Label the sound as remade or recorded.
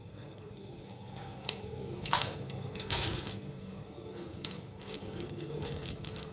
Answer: remade